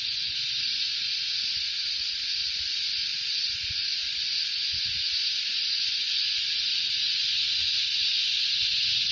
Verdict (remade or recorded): remade